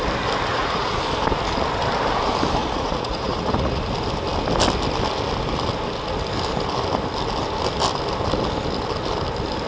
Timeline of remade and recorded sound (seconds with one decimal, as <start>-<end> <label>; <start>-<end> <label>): 0.0-0.5 recorded; 0.5-1.0 remade; 1.0-2.6 recorded; 2.6-3.8 remade; 3.8-9.7 recorded